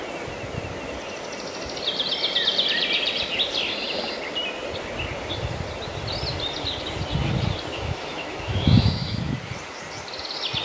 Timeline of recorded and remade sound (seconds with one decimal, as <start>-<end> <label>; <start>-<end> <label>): 0.0-7.7 recorded; 7.7-9.2 remade; 9.2-10.6 recorded